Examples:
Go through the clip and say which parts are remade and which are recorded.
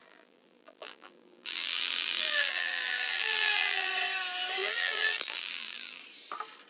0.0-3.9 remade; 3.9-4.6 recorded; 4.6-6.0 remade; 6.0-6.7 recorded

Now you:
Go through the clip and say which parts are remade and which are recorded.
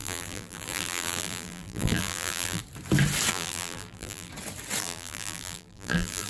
0.0-2.6 remade; 2.6-3.3 recorded; 3.3-4.3 remade; 4.3-4.8 recorded; 4.8-6.3 remade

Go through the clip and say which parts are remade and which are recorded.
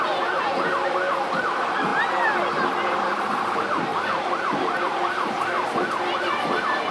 0.0-1.9 remade; 1.9-3.0 recorded; 3.0-6.9 remade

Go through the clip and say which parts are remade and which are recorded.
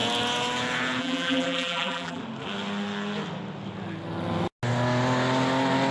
0.0-1.0 recorded; 1.0-2.2 remade; 2.2-5.9 recorded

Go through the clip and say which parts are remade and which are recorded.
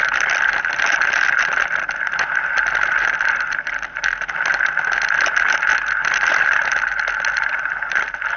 0.0-5.7 remade; 5.7-6.3 recorded; 6.3-8.4 remade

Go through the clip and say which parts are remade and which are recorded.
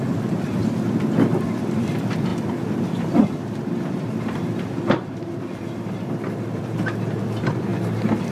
0.0-7.7 remade; 7.7-8.3 recorded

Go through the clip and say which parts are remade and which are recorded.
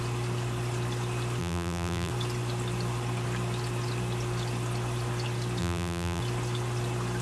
0.0-1.4 recorded; 1.4-2.1 remade; 2.1-5.6 recorded; 5.6-6.2 remade; 6.2-7.2 recorded